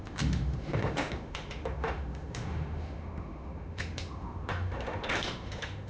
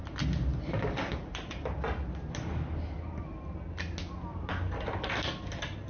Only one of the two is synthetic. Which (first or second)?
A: first